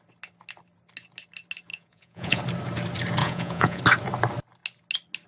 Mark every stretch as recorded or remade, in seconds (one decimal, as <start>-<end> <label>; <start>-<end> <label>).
0.0-1.7 recorded; 1.7-2.4 remade; 2.4-3.2 recorded; 3.2-3.8 remade; 3.8-5.3 recorded